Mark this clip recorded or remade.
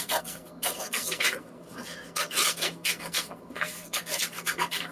remade